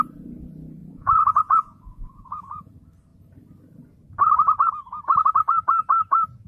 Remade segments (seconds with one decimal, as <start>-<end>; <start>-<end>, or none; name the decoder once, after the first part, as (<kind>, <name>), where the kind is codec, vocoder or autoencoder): 0.8-2.7 (vocoder, Vocos)